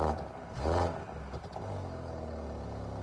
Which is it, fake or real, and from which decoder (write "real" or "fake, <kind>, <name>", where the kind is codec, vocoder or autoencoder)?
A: real